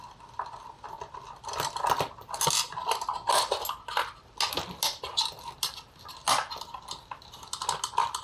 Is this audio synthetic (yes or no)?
no